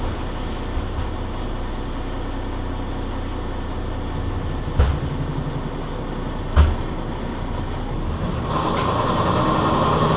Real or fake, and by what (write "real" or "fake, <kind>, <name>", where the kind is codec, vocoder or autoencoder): real